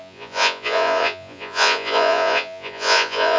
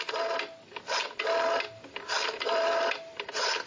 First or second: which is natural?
second